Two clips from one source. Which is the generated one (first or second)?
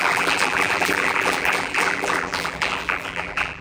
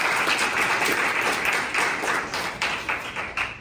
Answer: first